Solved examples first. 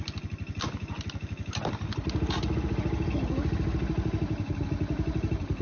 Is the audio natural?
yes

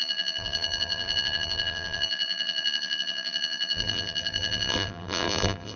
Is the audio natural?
no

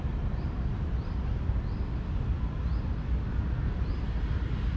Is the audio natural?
yes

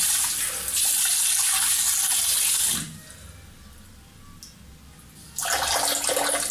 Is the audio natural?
yes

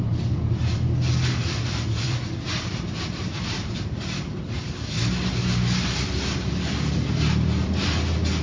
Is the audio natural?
no